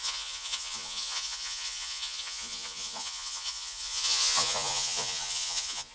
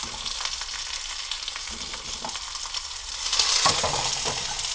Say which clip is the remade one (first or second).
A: first